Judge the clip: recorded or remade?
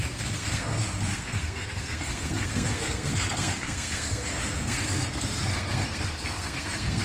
remade